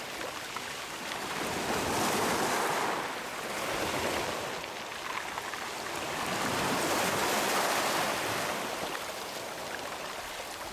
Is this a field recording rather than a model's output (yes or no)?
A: yes